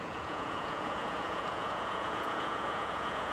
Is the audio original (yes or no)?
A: no